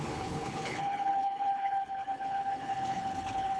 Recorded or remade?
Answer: remade